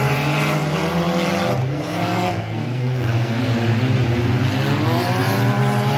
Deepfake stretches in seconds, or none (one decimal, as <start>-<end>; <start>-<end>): 1.6-3.4